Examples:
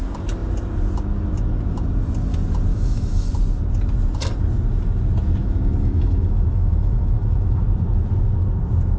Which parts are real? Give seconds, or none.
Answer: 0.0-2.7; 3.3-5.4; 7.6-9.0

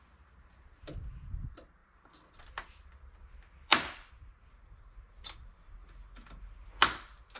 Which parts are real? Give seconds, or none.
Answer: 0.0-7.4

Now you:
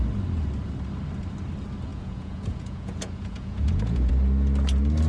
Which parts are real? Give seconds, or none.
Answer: 0.0-1.9; 4.1-5.1